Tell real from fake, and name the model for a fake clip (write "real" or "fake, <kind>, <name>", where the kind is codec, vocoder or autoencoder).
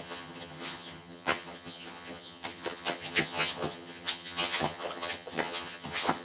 fake, vocoder, HiFi-GAN